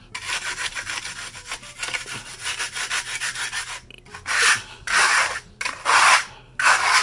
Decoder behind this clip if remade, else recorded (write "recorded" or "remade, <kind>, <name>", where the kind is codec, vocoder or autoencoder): recorded